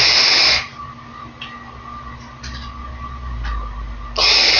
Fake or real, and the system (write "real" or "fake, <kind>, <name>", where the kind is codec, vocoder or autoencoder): real